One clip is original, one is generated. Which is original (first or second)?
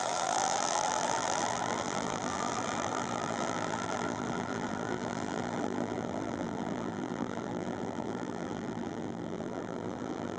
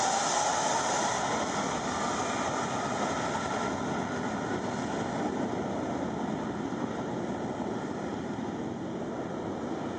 second